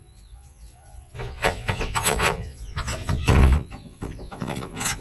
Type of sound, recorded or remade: remade